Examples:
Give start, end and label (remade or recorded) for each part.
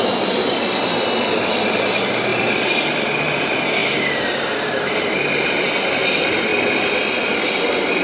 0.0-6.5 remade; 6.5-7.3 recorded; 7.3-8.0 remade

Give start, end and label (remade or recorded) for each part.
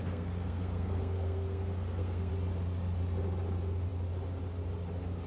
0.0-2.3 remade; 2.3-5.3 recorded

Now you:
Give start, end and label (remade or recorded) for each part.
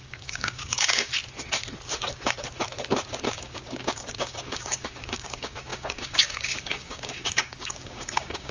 0.0-1.1 remade; 1.1-3.3 recorded; 3.3-8.5 remade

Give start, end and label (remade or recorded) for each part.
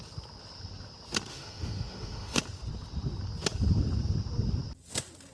0.0-1.3 recorded; 1.3-2.4 remade; 2.4-5.3 recorded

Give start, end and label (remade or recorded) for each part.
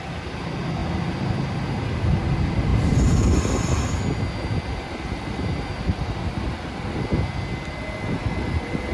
0.0-8.9 recorded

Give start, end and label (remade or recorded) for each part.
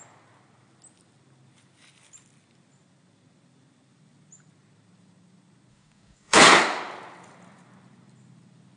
0.0-5.7 recorded; 5.7-6.4 remade; 6.4-8.8 recorded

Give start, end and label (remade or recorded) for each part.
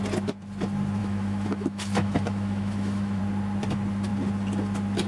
0.0-1.0 recorded; 1.0-3.2 remade; 3.2-5.1 recorded